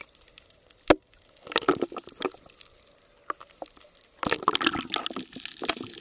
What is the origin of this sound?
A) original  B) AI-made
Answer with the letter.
A